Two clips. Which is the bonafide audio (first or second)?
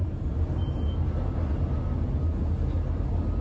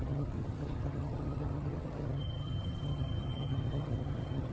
first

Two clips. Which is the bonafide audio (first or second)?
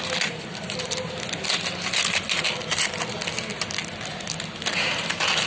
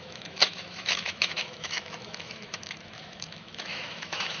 first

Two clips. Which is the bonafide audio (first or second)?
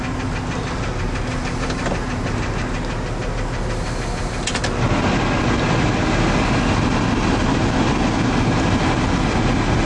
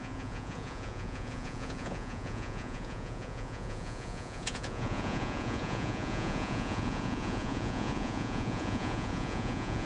first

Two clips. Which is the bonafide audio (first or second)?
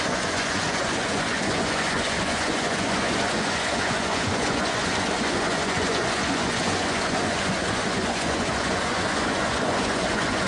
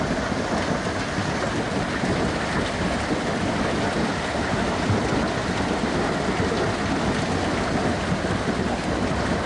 second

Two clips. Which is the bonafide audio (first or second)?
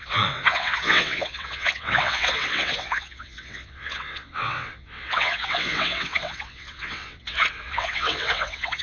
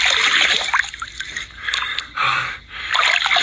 second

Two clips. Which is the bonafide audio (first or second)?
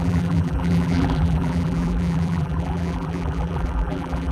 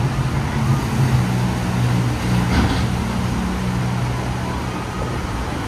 second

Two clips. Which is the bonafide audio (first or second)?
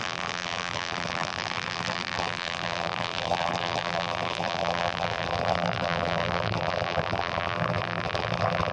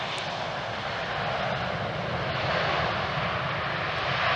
second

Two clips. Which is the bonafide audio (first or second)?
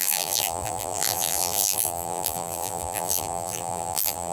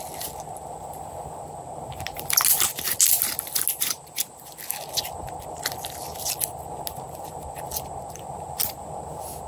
second